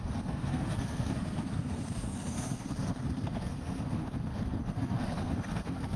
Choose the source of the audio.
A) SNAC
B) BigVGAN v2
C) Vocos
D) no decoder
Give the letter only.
A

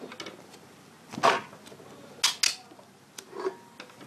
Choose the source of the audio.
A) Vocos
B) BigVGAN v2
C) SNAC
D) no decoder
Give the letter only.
D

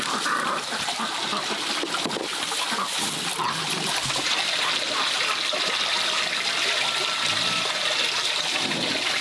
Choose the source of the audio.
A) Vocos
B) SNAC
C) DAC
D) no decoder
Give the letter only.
D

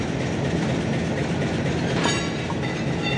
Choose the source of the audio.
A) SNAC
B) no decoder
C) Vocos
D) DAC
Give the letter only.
B